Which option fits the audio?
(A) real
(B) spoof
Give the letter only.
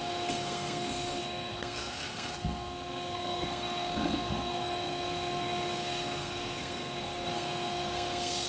B